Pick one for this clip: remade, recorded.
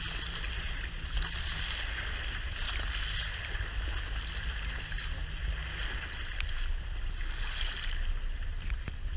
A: recorded